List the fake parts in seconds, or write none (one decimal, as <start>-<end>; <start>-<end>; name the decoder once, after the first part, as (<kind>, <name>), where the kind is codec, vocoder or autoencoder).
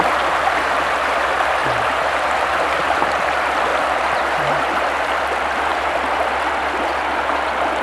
1.6-2.6 (vocoder, BigVGAN v2); 3.7-5.2